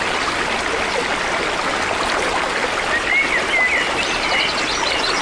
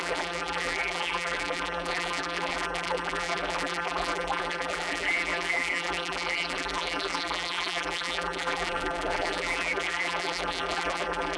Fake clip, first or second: second